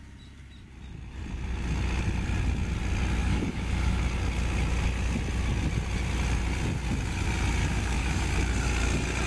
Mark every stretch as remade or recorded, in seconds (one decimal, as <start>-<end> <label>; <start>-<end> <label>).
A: 0.0-3.2 recorded; 3.2-4.0 remade; 4.0-7.6 recorded; 7.6-8.2 remade; 8.2-9.3 recorded